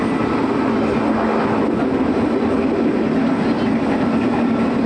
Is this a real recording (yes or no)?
yes